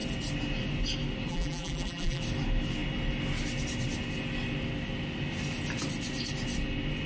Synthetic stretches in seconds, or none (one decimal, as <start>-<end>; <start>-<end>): 1.3-2.2